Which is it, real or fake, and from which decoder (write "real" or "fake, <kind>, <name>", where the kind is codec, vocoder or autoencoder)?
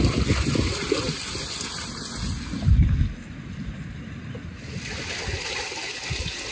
real